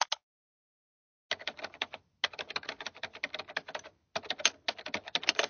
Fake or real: real